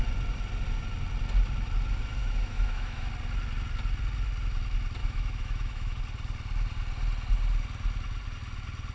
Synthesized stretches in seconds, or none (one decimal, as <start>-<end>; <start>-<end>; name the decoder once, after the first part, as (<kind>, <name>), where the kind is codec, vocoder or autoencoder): 2.2-3.1 (autoencoder, DAC-VAE); 5.0-6.0